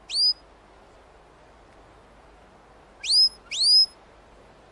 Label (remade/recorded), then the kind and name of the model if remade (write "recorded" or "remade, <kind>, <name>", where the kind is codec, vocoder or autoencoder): recorded